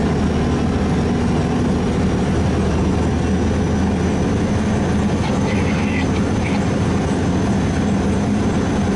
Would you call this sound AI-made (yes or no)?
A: no